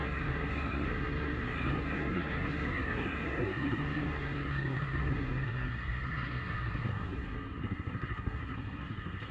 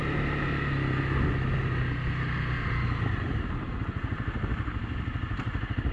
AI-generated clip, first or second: first